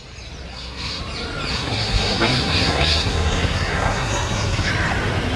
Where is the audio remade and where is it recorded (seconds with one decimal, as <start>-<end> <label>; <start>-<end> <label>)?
0.0-0.5 recorded; 0.5-1.0 remade; 1.0-1.5 recorded; 1.5-4.7 remade; 4.7-5.4 recorded

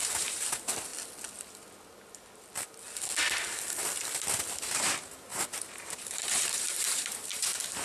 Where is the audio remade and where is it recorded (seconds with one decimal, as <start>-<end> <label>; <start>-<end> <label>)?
0.0-0.9 remade; 0.9-4.6 recorded; 4.6-7.8 remade

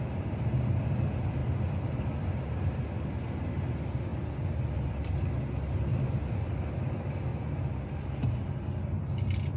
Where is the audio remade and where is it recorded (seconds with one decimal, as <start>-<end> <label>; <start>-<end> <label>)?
0.0-4.1 recorded; 4.1-4.7 remade; 4.7-5.9 recorded; 5.9-6.8 remade; 6.8-7.3 recorded; 7.3-8.0 remade; 8.0-9.6 recorded

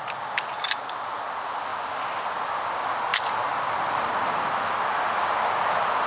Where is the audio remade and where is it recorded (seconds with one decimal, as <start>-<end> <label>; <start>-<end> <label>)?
0.0-6.1 recorded